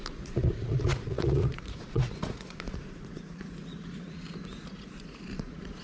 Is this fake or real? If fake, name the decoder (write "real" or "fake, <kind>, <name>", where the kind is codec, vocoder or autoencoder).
fake, vocoder, Vocos